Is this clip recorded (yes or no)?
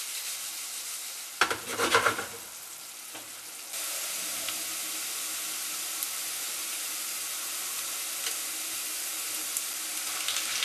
yes